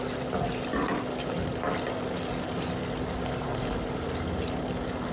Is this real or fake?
real